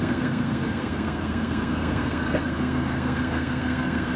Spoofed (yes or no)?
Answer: yes